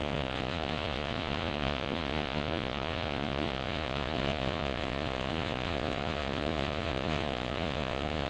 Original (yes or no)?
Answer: no